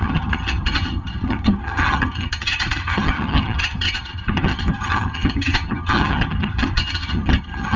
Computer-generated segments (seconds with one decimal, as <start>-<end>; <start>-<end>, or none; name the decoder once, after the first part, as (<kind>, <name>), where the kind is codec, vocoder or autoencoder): 0.0-7.8 (vocoder, HiFi-GAN)